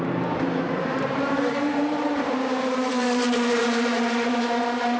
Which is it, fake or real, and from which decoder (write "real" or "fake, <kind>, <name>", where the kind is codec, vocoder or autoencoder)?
fake, vocoder, BigVGAN v2